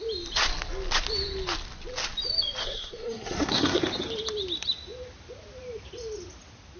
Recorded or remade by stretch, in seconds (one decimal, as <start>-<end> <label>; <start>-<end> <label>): 0.0-2.6 recorded; 2.6-3.8 remade; 3.8-6.8 recorded